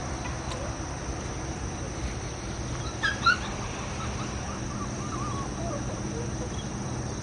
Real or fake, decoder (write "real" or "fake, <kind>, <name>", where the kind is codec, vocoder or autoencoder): fake, vocoder, BigVGAN v2